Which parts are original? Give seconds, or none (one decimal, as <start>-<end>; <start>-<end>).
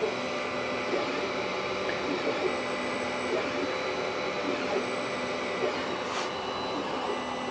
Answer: 0.0-7.5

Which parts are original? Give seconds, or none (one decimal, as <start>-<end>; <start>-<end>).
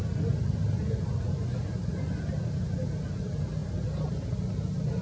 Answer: 0.0-5.0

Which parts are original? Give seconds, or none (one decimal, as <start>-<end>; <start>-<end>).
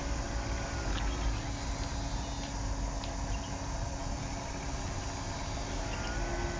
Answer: 0.0-6.6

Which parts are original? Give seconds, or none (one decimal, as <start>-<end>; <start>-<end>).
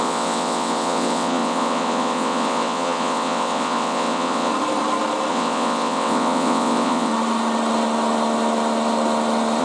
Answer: 4.5-5.3; 7.1-9.6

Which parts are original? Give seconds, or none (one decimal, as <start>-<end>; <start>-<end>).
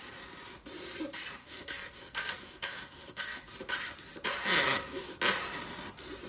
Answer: 0.0-1.4; 3.5-4.6; 5.2-6.3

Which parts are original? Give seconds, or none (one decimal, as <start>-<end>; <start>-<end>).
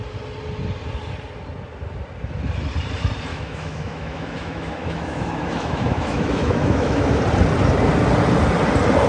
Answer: 0.0-3.3; 7.2-9.1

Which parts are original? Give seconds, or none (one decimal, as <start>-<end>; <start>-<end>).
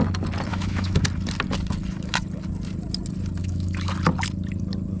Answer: 0.0-0.5; 1.0-3.4; 3.9-5.0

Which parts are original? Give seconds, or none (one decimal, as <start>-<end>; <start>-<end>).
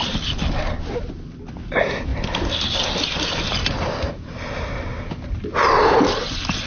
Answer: 2.1-5.6